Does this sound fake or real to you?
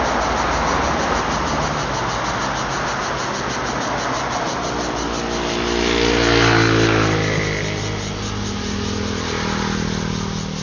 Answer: real